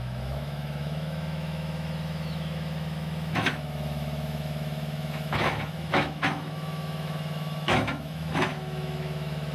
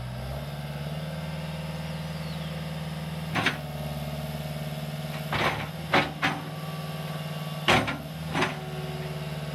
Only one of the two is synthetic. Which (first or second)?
first